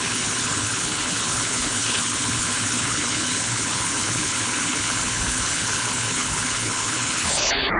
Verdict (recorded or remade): remade